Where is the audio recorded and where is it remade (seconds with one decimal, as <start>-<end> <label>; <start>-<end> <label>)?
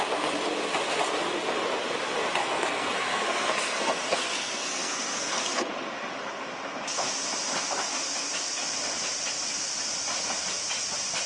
0.0-2.4 recorded; 2.4-5.7 remade; 5.7-11.3 recorded